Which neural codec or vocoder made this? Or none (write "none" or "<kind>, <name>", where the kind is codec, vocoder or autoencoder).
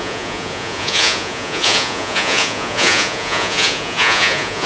vocoder, Vocos